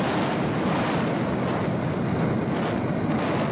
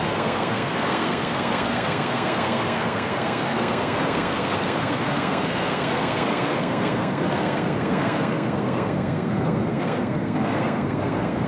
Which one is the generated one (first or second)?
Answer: second